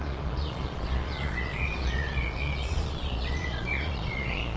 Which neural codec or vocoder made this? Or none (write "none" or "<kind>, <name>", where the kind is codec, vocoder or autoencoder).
vocoder, Vocos